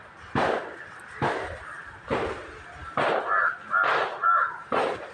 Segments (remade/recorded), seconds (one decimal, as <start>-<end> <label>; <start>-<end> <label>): 0.0-5.1 recorded